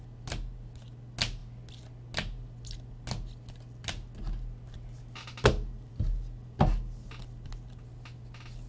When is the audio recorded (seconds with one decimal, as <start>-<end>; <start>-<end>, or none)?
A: 0.0-8.7